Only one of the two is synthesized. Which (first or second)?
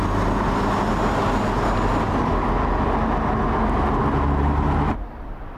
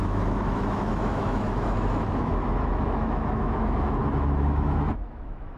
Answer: second